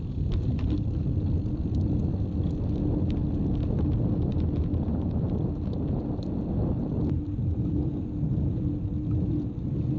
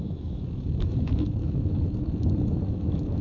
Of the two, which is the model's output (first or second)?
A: second